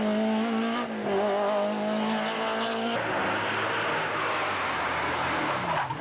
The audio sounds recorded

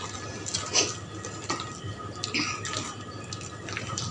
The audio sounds recorded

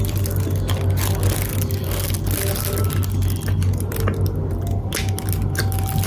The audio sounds recorded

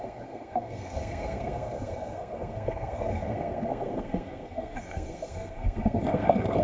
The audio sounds remade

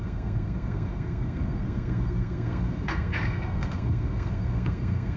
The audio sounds remade